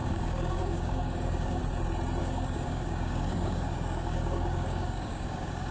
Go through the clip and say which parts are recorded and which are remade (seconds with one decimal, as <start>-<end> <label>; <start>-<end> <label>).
0.0-1.6 remade; 1.6-2.2 recorded; 2.2-5.7 remade